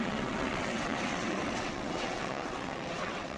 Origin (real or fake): fake